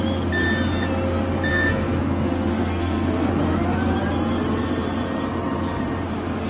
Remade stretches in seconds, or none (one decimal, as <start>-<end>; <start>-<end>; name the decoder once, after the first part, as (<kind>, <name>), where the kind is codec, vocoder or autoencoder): 1.5-3.3 (codec, SNAC)